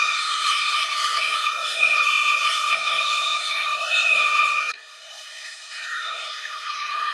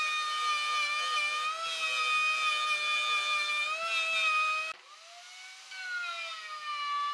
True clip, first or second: second